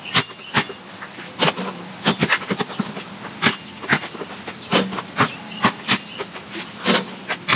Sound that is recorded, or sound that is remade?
recorded